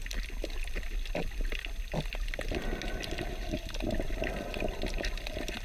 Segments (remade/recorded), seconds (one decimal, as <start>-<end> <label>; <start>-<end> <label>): 0.0-5.6 recorded